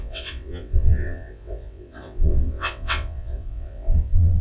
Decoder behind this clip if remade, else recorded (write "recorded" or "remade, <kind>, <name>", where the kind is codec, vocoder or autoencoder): remade, vocoder, WaveNeXt